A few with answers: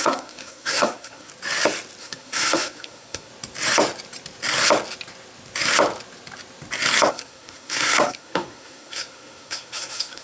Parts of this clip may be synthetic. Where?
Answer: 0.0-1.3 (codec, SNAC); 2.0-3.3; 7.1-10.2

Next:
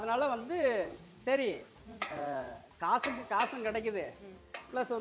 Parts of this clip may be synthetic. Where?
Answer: 0.4-3.4 (vocoder, Vocos)

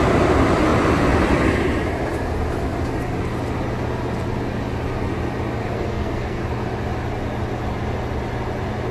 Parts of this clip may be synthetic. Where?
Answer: 5.6-6.4 (codec, SNAC)

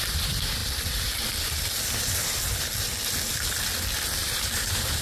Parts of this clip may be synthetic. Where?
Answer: 4.2-5.0 (vocoder, BigVGAN v2)

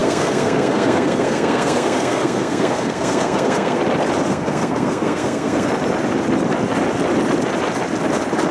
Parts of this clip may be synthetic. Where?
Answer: 0.0-3.8 (codec, SNAC); 4.3-5.7

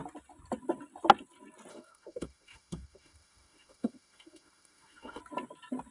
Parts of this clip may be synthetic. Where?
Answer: 1.7-5.2 (autoencoder, DAC-VAE)